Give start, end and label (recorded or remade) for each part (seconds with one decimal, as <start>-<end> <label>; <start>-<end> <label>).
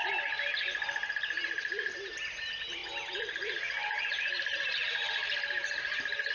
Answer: 0.0-6.3 recorded